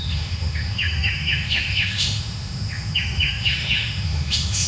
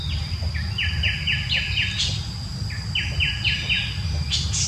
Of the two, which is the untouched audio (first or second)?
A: second